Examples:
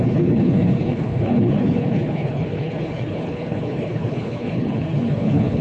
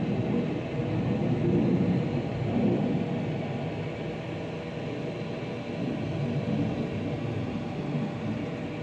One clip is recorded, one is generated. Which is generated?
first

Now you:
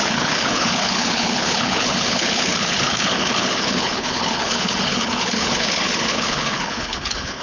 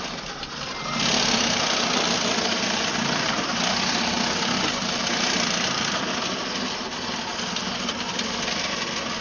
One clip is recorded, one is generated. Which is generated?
first